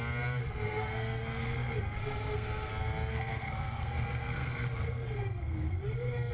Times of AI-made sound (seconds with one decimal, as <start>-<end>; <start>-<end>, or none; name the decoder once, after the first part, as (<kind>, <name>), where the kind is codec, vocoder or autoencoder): 0.4-2.7 (codec, SNAC); 3.1-6.3